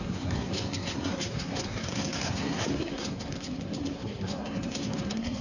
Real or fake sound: fake